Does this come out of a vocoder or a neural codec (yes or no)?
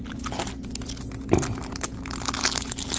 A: no